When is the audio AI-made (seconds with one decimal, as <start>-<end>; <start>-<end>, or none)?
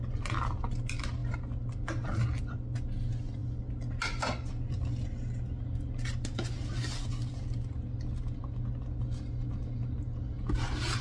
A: none